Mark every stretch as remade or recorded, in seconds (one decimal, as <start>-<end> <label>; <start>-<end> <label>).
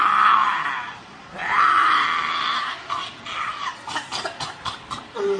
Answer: 0.0-0.4 recorded; 0.4-1.6 remade; 1.6-5.4 recorded